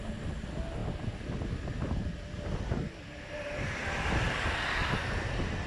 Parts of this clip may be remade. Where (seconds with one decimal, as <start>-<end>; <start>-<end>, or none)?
none